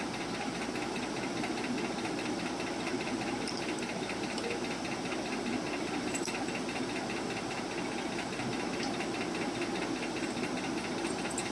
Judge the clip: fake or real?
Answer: real